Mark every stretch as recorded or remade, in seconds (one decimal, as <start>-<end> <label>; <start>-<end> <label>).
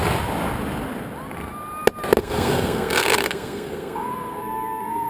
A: 0.0-2.2 recorded; 2.2-5.1 remade